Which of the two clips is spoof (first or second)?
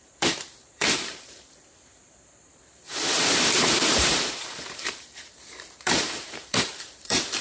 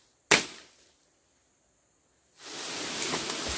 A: first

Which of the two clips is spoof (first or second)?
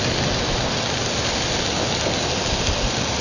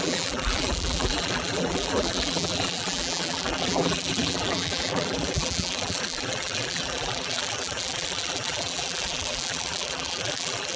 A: second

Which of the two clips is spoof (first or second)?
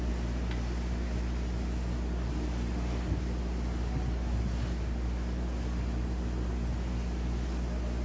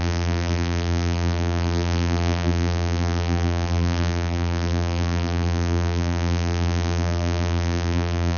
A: second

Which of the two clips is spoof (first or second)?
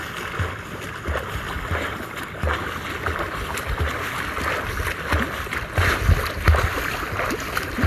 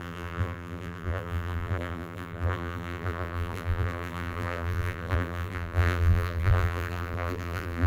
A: second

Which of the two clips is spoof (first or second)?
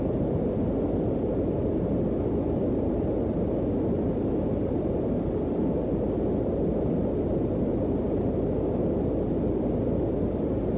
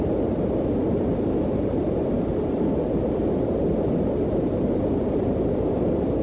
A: second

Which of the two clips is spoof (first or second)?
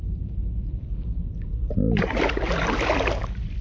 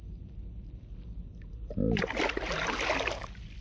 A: first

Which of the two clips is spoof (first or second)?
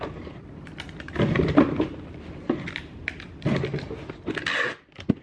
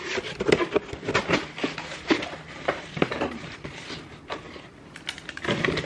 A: first